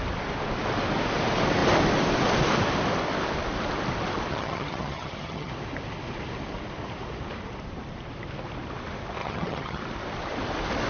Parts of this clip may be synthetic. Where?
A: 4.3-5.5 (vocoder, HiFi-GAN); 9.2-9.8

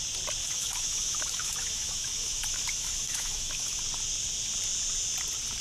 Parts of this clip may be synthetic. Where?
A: 0.4-3.8 (autoencoder, DAC-VAE)